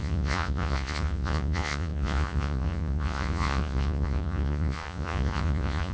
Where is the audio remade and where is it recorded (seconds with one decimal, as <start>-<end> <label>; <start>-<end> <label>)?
0.0-5.9 remade